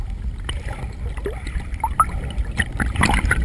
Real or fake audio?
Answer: real